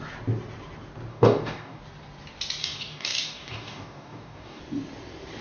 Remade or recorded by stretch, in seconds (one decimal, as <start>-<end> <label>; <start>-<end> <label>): 0.0-1.1 recorded; 1.1-1.8 remade; 1.8-2.6 recorded; 2.6-4.6 remade; 4.6-5.4 recorded